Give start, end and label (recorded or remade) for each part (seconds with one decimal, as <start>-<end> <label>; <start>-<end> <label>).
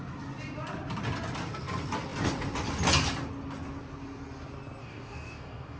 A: 0.0-4.8 recorded; 4.8-5.8 remade